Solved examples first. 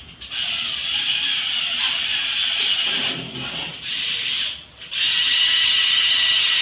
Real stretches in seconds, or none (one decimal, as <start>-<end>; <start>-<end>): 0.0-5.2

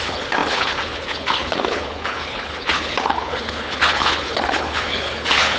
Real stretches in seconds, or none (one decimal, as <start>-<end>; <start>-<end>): none

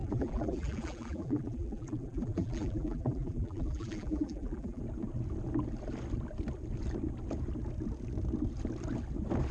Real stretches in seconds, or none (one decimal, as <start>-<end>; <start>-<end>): 4.8-9.5